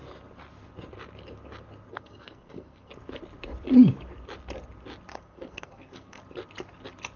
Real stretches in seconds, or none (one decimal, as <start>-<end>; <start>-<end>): 0.0-1.9; 2.9-5.1; 6.2-7.2